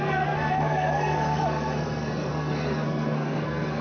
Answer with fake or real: fake